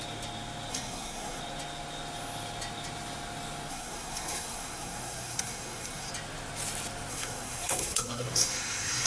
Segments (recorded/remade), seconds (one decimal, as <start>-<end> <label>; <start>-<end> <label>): 0.0-0.7 recorded; 0.7-1.4 remade; 1.4-3.7 recorded; 3.7-6.1 remade; 6.1-7.1 recorded; 7.1-9.1 remade